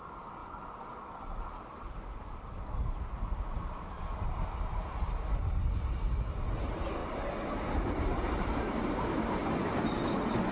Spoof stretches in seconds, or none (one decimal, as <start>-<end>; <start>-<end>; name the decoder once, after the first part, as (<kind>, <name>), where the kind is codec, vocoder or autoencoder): none